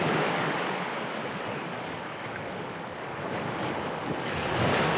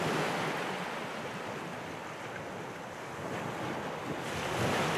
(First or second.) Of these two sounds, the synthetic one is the first